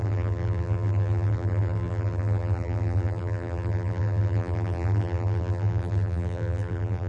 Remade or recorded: remade